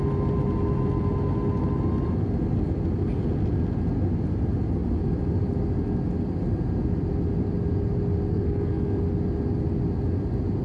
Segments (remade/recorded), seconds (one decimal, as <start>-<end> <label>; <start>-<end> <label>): 0.0-8.3 recorded; 8.3-9.0 remade; 9.0-10.6 recorded